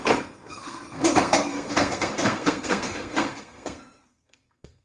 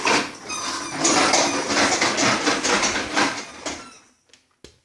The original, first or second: second